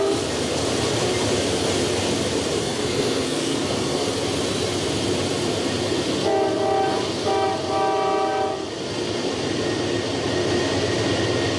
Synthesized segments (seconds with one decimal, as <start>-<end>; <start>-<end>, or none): 2.6-4.1

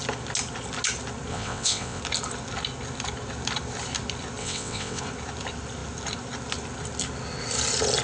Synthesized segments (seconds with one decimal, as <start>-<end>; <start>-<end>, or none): 1.3-2.0; 4.4-5.0

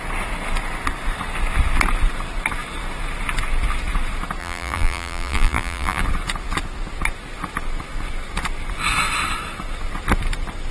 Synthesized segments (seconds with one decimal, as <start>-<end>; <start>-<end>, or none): 4.4-6.0

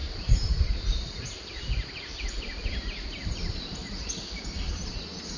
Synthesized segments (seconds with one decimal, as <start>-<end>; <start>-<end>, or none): 0.0-3.8; 4.3-5.4

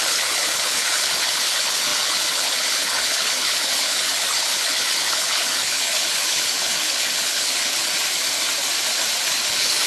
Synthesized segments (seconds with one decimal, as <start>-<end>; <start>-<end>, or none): 0.0-7.9; 9.4-9.9

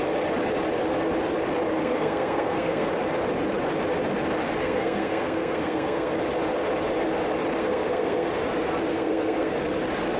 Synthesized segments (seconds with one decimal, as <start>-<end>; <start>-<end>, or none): 1.8-2.9; 4.6-6.1; 7.6-8.3; 8.9-9.5

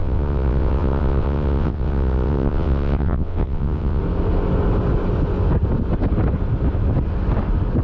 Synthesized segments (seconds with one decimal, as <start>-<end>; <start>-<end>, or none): 0.0-4.0

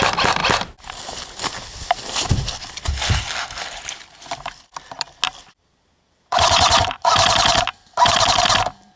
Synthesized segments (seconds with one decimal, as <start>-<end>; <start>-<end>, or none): 5.6-7.1